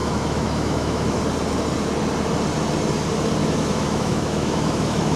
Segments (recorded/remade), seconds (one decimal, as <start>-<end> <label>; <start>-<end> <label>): 0.0-1.2 remade; 1.2-3.4 recorded; 3.4-5.2 remade